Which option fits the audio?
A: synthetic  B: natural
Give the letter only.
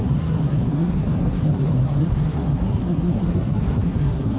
A